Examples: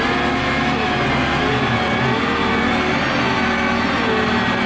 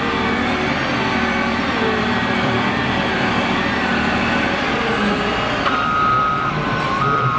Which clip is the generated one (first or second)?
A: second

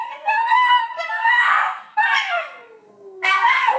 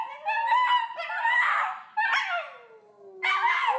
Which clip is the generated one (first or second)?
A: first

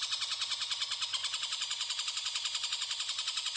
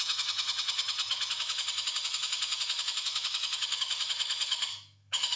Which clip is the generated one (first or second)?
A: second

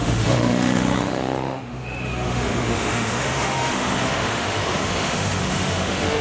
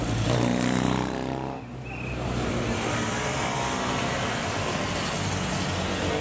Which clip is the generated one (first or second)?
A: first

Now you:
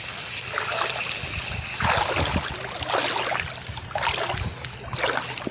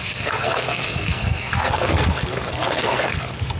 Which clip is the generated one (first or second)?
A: second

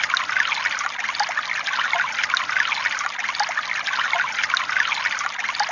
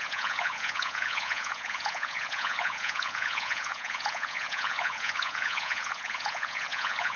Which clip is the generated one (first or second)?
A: second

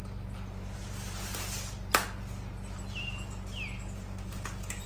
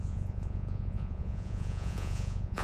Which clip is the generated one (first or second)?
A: second